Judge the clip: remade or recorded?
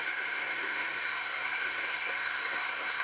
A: remade